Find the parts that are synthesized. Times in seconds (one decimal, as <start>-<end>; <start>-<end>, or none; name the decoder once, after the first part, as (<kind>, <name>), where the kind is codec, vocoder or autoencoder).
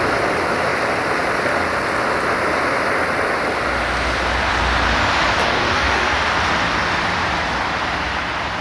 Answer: 5.4-6.0 (codec, DAC)